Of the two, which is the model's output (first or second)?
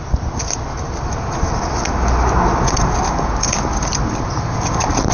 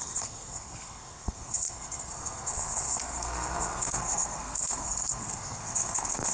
second